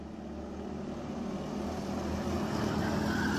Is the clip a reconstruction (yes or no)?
no